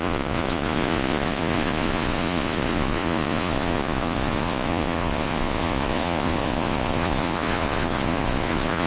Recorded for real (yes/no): no